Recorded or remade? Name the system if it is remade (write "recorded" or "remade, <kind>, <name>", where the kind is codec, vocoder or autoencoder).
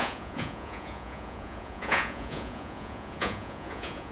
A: remade, vocoder, Vocos